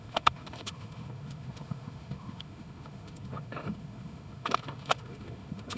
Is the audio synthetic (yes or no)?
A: yes